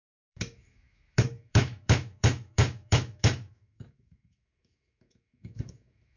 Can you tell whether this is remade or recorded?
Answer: remade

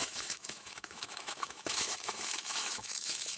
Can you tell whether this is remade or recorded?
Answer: remade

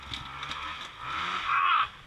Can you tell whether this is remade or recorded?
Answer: recorded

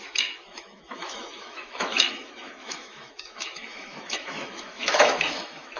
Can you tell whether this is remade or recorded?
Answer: remade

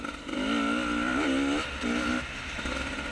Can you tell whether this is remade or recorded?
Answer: recorded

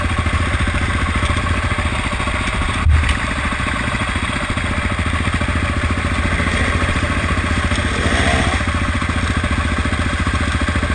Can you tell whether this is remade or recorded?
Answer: recorded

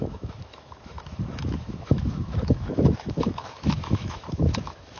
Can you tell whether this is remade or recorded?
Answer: remade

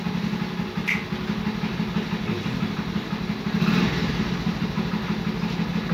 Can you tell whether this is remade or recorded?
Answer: recorded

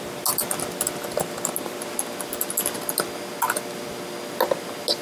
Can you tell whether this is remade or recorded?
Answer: recorded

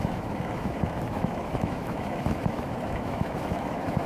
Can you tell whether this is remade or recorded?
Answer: remade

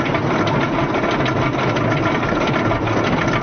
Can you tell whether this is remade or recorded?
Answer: recorded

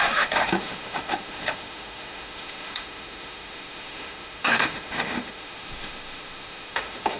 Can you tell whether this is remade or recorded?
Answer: remade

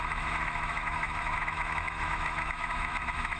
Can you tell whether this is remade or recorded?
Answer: remade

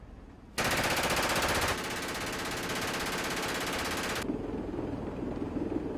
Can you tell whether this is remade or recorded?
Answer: recorded